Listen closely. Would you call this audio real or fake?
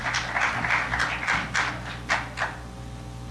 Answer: real